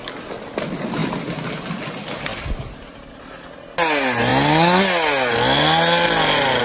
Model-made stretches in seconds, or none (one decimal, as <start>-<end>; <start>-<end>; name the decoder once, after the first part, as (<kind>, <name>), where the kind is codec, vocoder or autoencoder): none